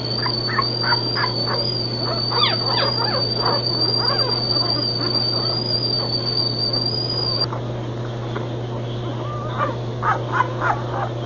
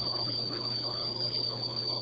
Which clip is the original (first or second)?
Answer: first